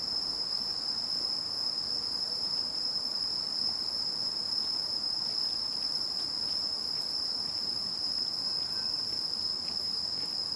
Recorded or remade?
remade